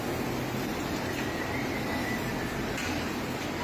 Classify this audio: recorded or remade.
recorded